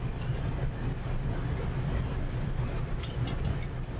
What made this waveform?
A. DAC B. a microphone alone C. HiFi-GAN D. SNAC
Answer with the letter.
B